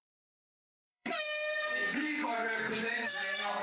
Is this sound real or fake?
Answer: fake